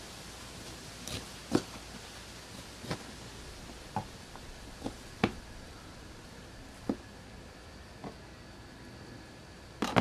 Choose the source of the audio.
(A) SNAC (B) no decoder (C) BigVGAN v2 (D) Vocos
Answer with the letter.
B